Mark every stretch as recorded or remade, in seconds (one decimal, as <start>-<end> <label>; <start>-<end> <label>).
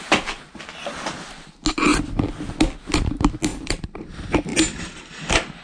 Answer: 0.0-3.5 recorded; 3.5-4.1 remade; 4.1-5.6 recorded